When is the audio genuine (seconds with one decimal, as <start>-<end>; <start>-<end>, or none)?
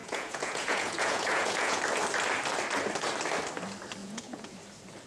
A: 1.8-4.0; 4.5-5.1